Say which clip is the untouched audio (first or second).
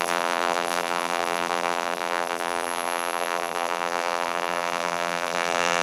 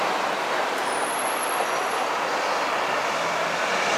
second